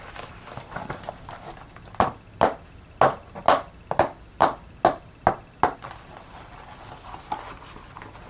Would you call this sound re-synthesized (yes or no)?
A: no